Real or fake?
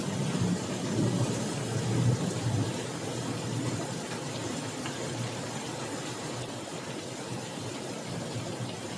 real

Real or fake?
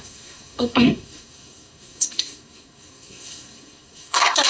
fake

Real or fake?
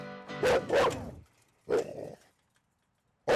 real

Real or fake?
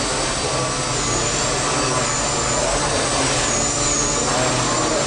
real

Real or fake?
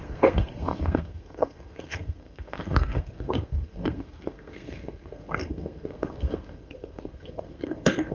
fake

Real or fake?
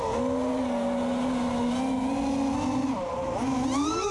real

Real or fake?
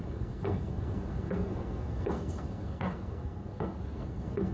fake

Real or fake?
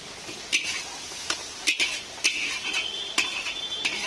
real